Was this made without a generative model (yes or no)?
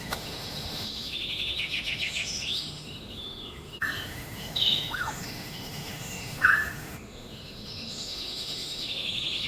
no